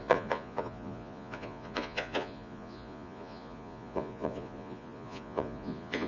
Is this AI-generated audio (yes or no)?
yes